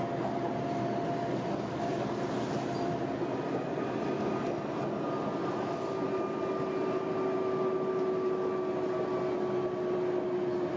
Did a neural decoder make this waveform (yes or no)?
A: no